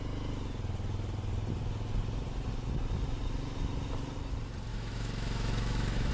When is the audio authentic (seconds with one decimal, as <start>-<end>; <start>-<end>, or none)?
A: 0.0-4.7